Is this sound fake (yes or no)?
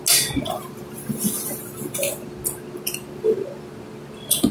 no